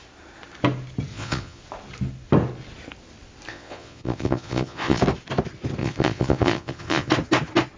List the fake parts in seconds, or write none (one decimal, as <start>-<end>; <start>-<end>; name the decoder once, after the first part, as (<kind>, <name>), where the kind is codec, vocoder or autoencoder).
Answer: 1.1-1.6 (vocoder, Vocos); 3.5-5.0; 5.8-7.1